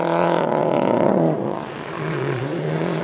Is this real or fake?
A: fake